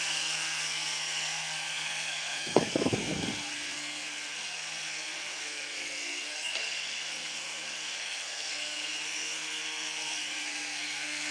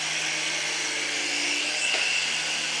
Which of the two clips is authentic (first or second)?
second